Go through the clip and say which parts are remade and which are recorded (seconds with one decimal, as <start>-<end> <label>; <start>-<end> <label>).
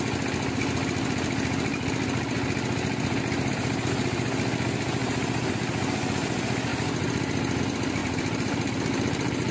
0.0-5.0 recorded; 5.0-5.5 remade; 5.5-8.0 recorded; 8.0-8.7 remade; 8.7-9.5 recorded